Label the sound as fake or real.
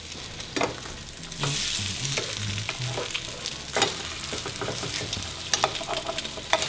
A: real